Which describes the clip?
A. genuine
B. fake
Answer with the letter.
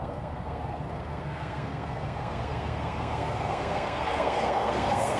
B